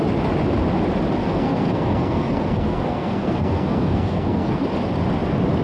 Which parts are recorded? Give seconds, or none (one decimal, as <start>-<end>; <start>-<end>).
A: 0.0-1.2; 4.6-5.6